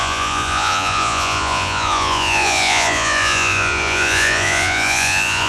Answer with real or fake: fake